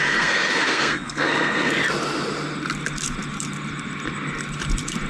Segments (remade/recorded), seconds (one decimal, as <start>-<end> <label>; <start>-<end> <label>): 0.0-1.8 remade; 1.8-5.1 recorded